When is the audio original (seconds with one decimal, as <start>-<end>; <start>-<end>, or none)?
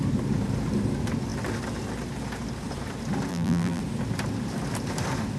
0.0-3.3; 3.8-5.4